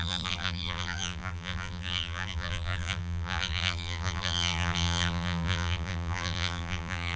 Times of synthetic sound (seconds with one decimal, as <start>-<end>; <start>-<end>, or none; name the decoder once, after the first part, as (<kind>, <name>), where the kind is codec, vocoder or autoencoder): 0.0-7.2 (vocoder, BigVGAN v2)